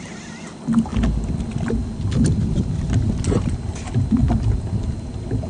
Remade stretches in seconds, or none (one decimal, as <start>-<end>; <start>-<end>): none